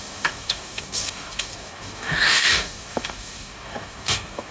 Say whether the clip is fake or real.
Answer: fake